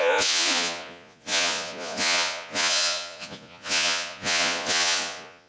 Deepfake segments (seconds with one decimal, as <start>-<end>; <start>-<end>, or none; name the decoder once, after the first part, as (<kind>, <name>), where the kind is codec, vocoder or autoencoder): 0.0-5.5 (vocoder, Vocos)